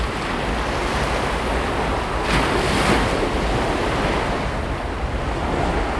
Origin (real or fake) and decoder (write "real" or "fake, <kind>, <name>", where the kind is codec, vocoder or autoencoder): real